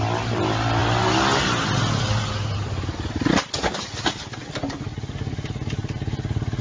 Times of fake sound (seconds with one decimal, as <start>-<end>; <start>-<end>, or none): none